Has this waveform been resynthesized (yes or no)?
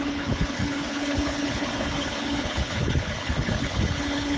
yes